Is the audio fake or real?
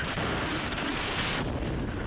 real